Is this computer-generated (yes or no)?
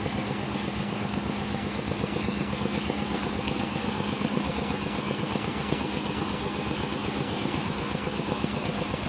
yes